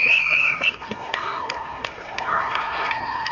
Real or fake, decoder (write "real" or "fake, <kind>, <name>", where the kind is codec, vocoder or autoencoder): fake, codec, SNAC